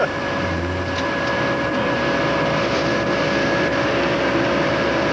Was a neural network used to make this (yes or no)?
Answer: no